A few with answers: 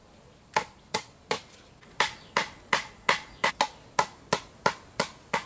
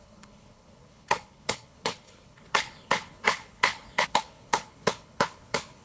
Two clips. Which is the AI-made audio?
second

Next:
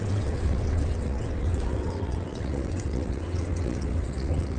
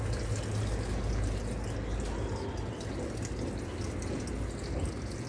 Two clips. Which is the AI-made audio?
first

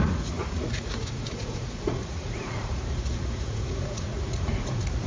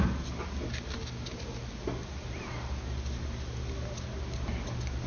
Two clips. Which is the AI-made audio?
first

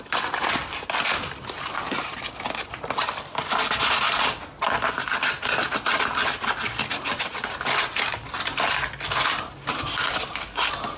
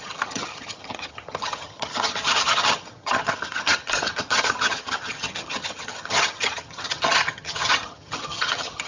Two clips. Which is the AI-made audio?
second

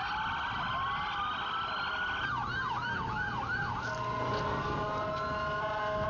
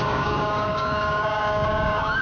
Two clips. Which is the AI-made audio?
second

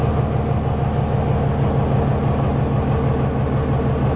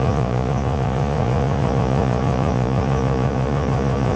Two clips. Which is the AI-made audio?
second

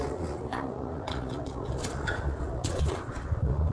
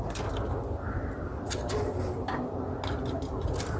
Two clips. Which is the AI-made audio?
first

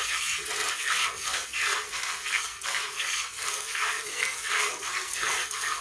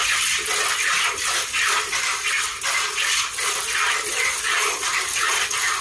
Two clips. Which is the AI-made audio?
first